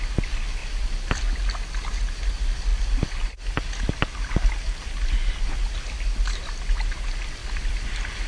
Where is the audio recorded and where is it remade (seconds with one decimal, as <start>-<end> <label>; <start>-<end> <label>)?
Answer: 0.0-0.6 recorded; 0.6-1.2 remade; 1.2-2.7 recorded; 2.7-4.5 remade; 4.5-7.4 recorded; 7.4-8.3 remade